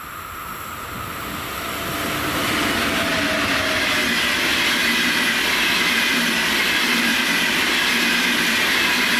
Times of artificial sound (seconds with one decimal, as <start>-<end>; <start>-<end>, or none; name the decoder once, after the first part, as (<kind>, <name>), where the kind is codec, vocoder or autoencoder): none